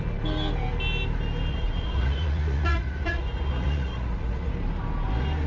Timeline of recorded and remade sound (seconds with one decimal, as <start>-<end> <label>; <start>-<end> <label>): 0.0-1.5 recorded; 1.5-4.5 remade; 4.5-5.5 recorded